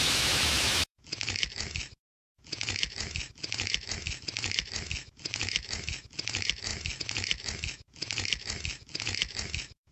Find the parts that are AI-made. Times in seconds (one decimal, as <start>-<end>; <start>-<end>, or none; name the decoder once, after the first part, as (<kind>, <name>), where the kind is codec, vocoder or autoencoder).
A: 0.0-9.9 (autoencoder, DAC-VAE)